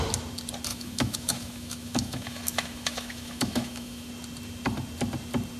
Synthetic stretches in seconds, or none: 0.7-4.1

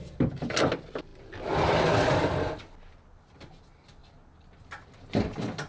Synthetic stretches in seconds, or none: none

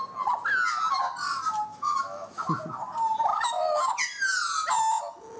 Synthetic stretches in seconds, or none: 1.7-2.4; 3.3-3.9

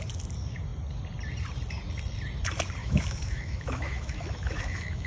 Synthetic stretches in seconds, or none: 2.8-5.1